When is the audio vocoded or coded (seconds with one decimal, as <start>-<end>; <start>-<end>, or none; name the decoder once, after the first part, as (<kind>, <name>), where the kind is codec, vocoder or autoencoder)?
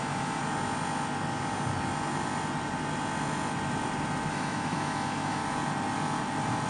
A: 0.0-0.4 (autoencoder, DAC-VAE); 4.3-5.4